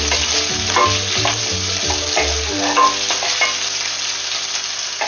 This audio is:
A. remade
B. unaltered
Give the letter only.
B